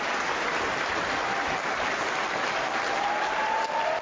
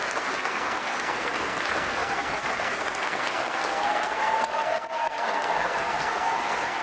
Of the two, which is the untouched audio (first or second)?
first